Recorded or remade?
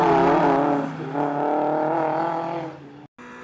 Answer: recorded